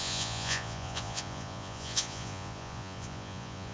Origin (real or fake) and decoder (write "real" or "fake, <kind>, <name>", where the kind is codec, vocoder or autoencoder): fake, vocoder, Vocos